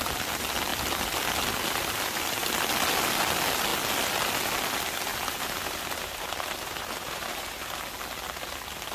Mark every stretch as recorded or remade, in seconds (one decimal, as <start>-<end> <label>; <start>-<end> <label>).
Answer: 0.0-5.1 recorded; 5.1-7.7 remade; 7.7-8.9 recorded